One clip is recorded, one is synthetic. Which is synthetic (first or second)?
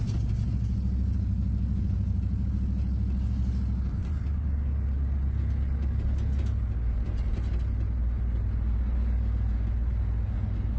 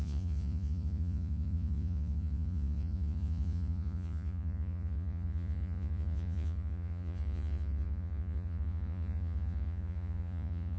second